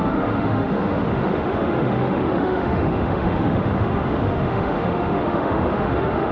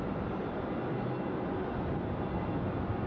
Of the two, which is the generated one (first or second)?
first